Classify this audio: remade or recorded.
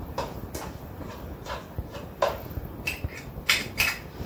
remade